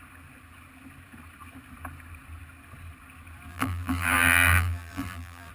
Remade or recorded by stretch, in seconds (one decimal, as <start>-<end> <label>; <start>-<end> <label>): 0.0-3.5 recorded; 3.5-5.5 remade